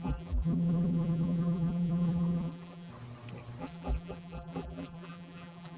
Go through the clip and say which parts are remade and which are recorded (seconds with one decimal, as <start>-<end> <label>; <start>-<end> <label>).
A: 0.0-2.9 remade; 2.9-3.6 recorded; 3.6-5.8 remade